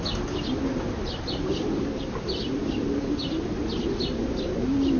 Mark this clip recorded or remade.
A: recorded